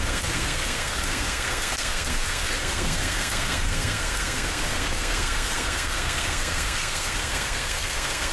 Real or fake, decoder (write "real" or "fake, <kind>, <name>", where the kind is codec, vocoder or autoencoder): fake, codec, SNAC